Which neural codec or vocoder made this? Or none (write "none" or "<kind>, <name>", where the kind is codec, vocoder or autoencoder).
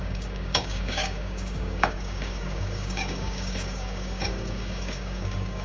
codec, DAC